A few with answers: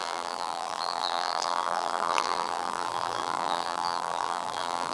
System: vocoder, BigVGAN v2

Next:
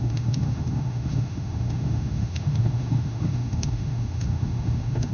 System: autoencoder, DAC-VAE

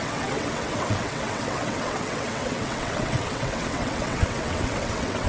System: vocoder, WaveNeXt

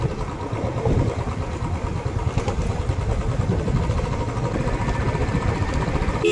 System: none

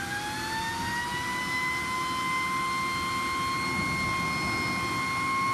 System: none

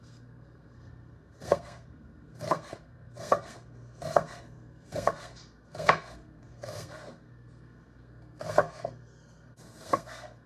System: codec, SNAC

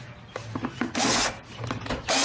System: none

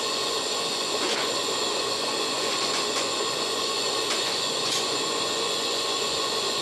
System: vocoder, Vocos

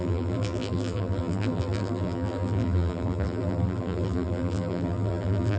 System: vocoder, BigVGAN v2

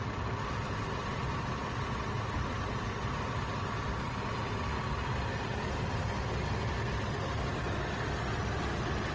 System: none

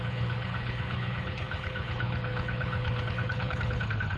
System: codec, HILCodec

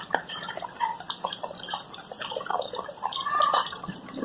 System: none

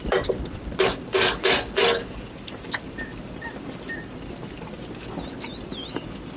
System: none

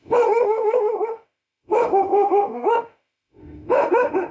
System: autoencoder, DAC-VAE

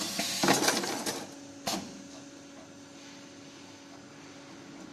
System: none